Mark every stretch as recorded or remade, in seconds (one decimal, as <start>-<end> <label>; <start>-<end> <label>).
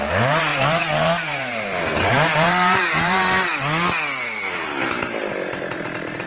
0.0-3.5 remade; 3.5-6.3 recorded